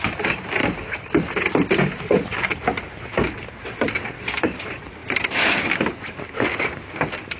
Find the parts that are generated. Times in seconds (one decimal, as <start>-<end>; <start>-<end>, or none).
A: none